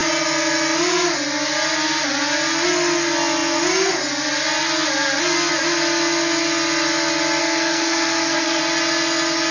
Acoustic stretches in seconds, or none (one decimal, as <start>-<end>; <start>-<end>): 0.0-7.4; 8.6-9.5